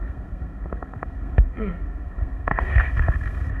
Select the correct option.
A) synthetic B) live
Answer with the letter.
A